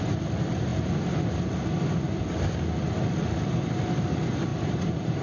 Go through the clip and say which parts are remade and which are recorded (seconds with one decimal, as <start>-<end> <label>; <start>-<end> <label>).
0.0-4.5 recorded; 4.5-5.2 remade